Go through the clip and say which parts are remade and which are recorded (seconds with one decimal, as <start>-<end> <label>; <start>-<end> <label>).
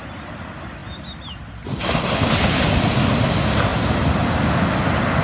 0.0-5.2 recorded